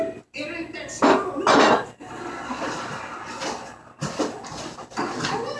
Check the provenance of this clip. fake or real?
real